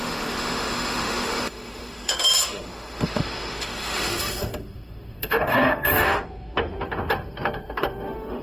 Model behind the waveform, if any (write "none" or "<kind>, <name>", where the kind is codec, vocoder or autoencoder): autoencoder, DAC-VAE